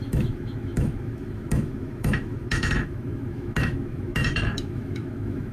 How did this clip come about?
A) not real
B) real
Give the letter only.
A